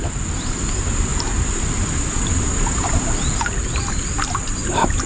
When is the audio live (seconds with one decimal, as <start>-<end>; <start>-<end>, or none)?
0.0-5.1